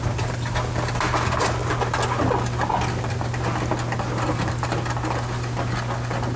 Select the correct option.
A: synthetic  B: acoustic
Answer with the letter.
B